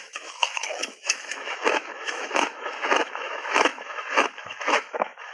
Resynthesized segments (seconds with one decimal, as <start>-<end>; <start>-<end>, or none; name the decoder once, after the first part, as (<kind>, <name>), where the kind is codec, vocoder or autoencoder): 0.0-5.3 (autoencoder, DAC-VAE)